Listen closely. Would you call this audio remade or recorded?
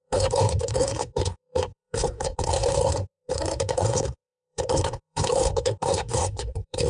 remade